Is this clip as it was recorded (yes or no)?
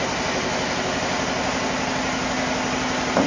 yes